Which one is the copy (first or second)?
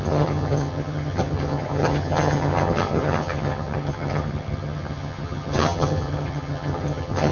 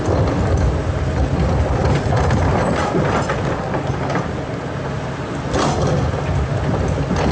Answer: first